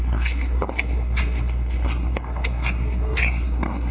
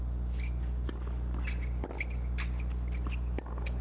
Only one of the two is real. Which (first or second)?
second